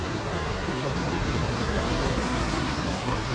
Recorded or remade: remade